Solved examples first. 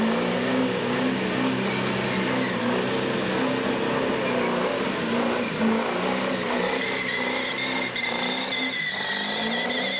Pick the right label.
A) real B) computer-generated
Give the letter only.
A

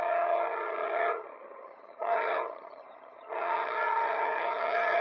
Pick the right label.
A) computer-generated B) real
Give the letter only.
A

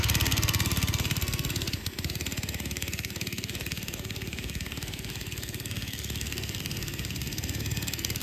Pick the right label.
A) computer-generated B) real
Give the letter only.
A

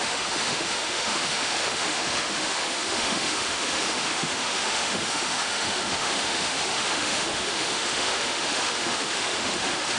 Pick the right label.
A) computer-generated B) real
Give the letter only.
A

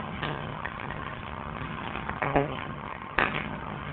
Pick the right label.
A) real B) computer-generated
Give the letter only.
B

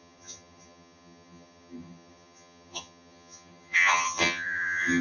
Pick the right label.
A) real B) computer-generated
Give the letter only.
B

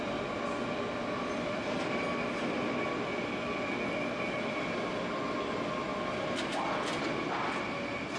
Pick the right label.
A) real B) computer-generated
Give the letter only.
A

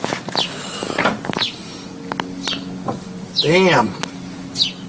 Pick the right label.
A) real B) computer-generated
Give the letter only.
A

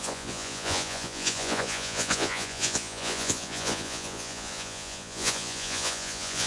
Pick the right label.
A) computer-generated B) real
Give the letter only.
A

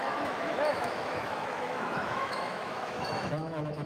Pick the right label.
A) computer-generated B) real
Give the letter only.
A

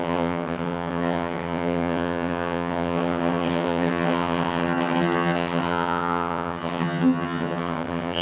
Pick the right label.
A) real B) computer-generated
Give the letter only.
B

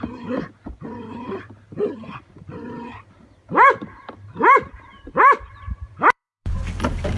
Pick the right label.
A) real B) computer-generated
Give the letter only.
B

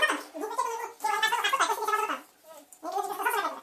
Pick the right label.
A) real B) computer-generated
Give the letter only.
A